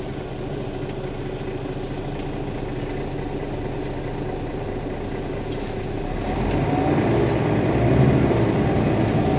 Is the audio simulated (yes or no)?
no